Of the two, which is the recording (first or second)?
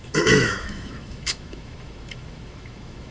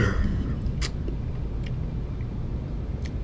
second